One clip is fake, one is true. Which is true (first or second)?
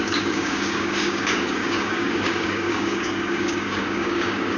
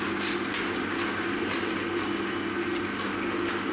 second